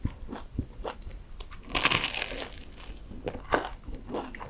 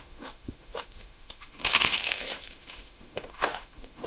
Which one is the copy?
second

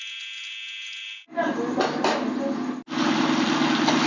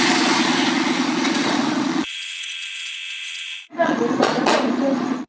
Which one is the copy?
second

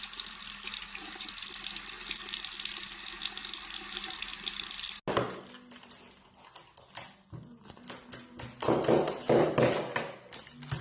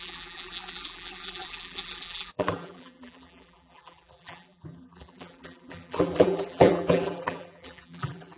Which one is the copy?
second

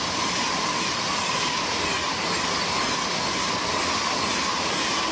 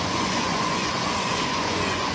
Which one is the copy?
second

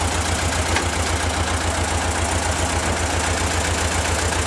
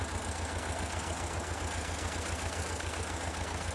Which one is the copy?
second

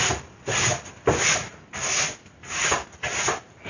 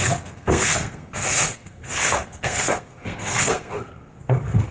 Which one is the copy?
second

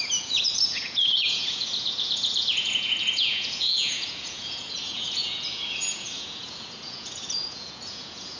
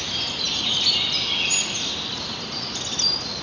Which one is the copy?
first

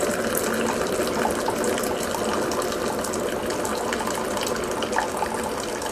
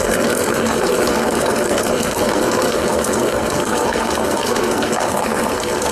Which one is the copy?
second